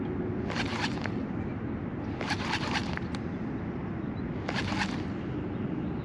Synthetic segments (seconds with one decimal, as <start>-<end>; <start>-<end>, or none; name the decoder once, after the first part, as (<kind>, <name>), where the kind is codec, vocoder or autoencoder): none